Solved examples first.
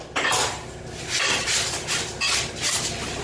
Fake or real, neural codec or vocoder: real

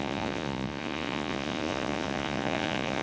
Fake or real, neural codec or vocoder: fake, vocoder, Vocos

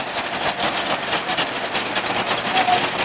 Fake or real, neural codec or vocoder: real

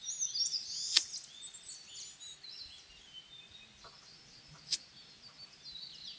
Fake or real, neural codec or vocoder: real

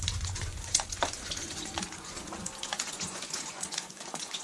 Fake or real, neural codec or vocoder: fake, vocoder, Vocos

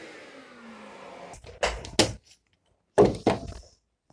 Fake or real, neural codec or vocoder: real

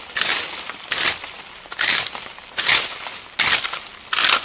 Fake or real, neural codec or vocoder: real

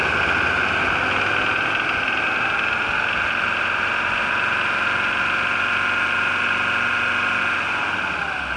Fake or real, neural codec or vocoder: real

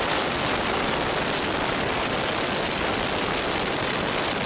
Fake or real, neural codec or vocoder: real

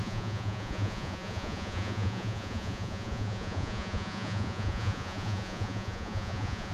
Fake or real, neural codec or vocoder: fake, vocoder, Vocos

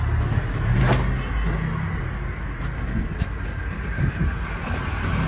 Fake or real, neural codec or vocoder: real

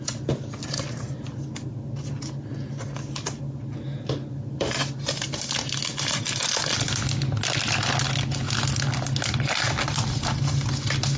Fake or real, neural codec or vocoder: real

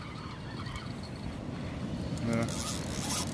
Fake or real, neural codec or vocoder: real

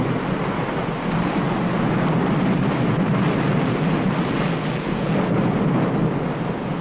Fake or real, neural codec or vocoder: real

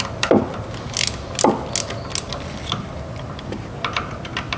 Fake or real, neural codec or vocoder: real